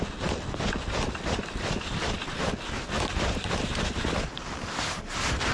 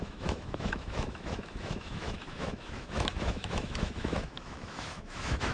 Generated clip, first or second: second